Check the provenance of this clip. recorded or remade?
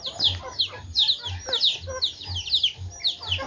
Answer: recorded